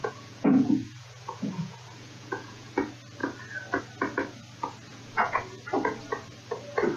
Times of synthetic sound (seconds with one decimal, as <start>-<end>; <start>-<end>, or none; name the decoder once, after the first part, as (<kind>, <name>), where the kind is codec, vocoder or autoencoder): 0.0-2.7 (vocoder, Vocos); 4.9-5.4